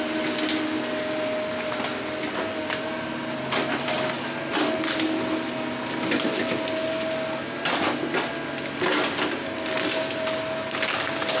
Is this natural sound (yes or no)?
yes